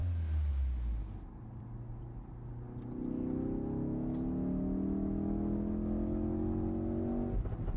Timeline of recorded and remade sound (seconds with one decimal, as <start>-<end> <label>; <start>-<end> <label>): 0.0-7.8 recorded